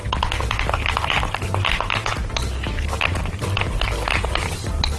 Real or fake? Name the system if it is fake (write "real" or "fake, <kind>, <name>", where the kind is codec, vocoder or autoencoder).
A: real